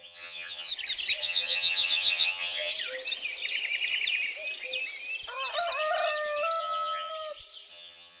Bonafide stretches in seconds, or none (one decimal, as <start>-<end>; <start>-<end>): 0.7-1.2; 2.7-6.6; 7.1-7.7